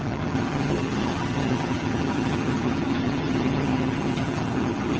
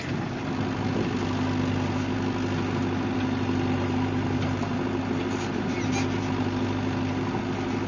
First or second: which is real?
second